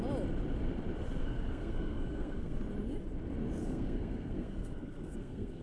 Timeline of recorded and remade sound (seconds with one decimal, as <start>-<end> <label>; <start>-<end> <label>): 0.0-1.2 recorded; 1.2-2.6 remade; 2.6-3.6 recorded; 3.6-5.6 remade